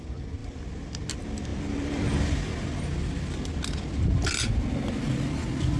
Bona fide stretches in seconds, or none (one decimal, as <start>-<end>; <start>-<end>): 0.0-5.8